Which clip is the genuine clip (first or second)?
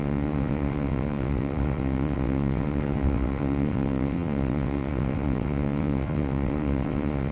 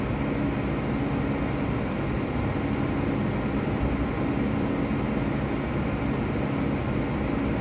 second